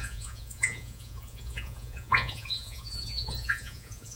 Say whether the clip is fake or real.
fake